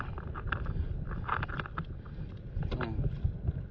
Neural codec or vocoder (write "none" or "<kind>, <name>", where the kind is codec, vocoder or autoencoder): none